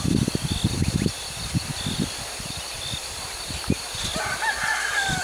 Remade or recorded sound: recorded